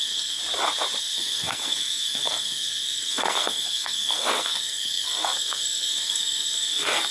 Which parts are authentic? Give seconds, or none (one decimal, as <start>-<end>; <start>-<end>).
0.4-1.0